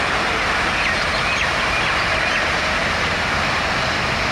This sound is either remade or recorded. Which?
recorded